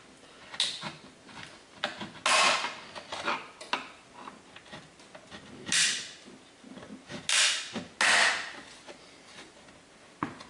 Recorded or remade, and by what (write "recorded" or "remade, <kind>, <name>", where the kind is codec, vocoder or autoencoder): recorded